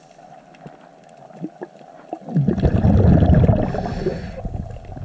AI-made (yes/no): no